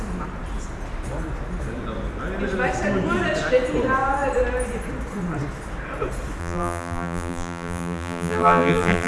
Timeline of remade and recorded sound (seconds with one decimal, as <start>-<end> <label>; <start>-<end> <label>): 0.0-6.4 recorded; 6.4-9.1 remade